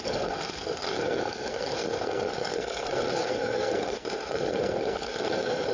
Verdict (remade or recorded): remade